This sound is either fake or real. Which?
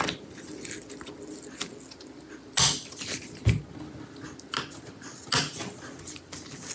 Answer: real